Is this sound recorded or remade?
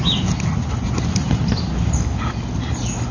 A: recorded